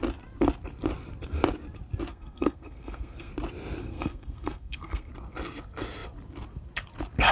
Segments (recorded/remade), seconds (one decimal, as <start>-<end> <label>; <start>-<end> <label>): 0.0-2.1 recorded; 2.1-3.3 remade; 3.3-3.8 recorded; 3.8-5.1 remade; 5.1-7.3 recorded